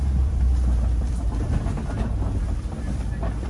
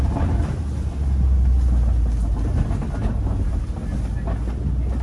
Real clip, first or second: second